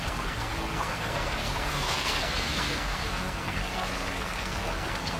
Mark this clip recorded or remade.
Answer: remade